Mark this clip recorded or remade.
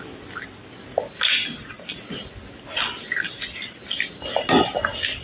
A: recorded